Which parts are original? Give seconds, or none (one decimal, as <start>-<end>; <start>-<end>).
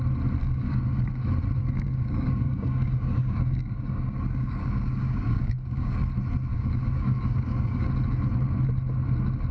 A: 0.0-0.4; 1.1-1.6; 6.1-6.5; 7.9-9.5